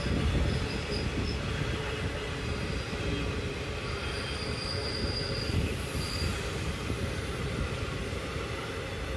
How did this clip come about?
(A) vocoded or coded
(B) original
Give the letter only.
B